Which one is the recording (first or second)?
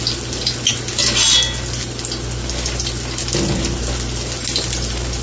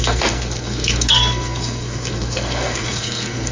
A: first